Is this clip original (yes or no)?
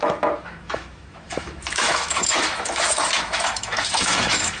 no